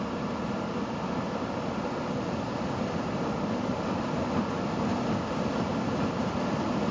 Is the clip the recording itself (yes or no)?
yes